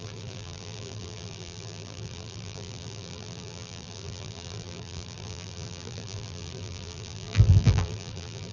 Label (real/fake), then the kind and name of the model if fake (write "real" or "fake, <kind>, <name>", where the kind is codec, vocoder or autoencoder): fake, vocoder, BigVGAN v2